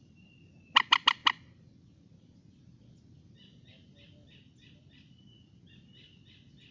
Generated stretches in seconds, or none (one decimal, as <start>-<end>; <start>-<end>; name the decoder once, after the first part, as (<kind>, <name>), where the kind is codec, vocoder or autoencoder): none